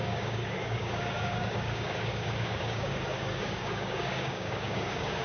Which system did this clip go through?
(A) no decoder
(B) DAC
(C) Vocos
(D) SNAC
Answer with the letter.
B